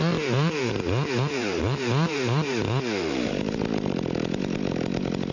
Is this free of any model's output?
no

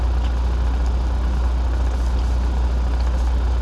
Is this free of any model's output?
yes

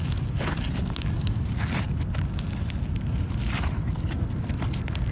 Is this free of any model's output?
yes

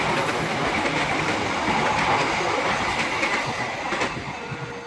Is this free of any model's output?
yes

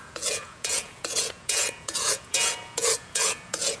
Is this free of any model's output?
no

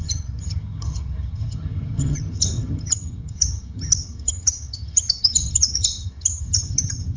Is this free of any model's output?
no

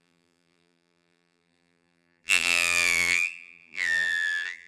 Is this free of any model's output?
no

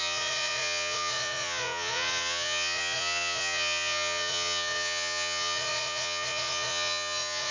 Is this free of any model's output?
no